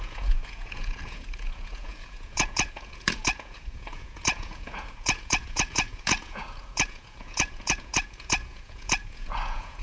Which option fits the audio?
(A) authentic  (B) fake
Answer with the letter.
B